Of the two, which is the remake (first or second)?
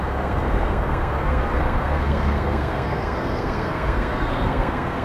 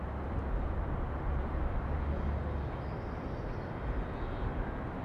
first